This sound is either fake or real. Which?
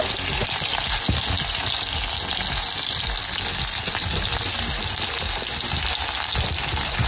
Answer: real